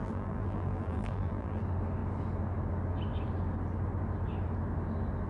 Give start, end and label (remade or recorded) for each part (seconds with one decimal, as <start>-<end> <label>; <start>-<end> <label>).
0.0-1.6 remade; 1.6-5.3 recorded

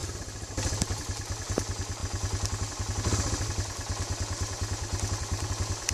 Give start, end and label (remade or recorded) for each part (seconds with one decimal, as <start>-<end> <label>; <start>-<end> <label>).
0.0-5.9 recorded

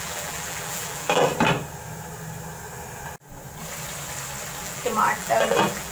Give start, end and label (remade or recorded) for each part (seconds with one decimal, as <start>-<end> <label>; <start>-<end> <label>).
0.0-1.3 remade; 1.3-4.6 recorded; 4.6-5.9 remade

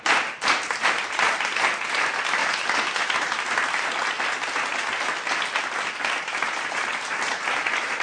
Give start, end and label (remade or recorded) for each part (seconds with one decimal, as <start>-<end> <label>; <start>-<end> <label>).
0.0-2.4 remade; 2.4-6.2 recorded; 6.2-8.0 remade

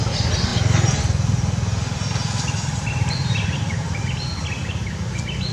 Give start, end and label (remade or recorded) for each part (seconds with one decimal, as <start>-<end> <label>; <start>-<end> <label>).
0.0-3.2 recorded; 3.2-3.9 remade; 3.9-5.5 recorded